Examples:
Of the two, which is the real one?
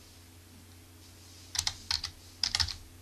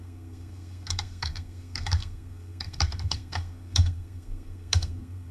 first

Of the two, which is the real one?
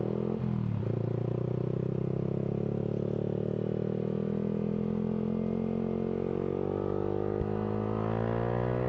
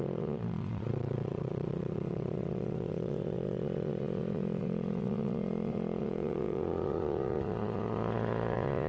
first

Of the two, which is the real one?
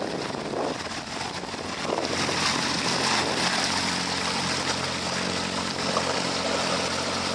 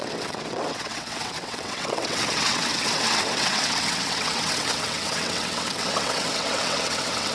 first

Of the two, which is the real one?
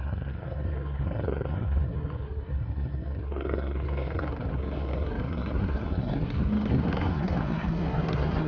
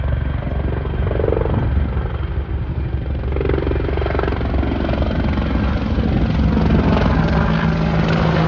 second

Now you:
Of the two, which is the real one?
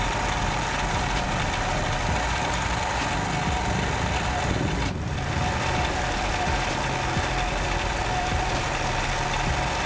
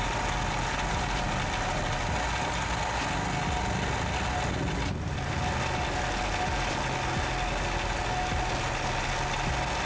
second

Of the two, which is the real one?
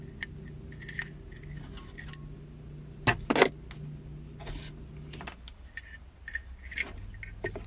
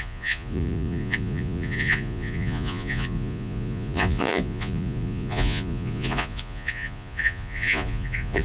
first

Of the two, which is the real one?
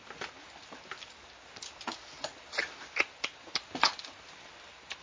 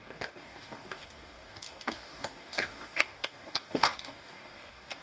first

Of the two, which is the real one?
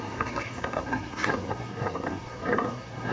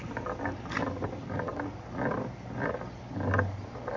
second